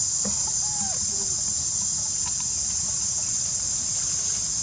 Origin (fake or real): real